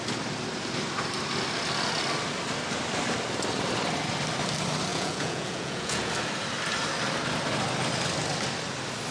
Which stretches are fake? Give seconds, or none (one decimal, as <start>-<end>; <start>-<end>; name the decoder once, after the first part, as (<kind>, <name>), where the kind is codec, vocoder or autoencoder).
4.9-6.1 (vocoder, Vocos)